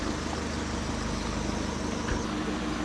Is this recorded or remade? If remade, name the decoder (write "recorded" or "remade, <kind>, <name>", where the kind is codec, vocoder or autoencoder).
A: recorded